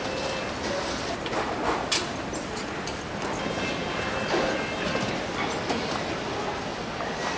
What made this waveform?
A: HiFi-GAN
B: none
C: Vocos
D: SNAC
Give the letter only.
B